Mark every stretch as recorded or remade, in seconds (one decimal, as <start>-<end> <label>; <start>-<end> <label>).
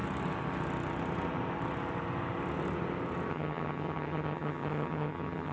0.0-3.3 recorded; 3.3-5.5 remade